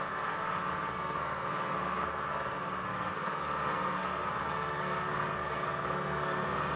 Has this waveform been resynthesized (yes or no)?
yes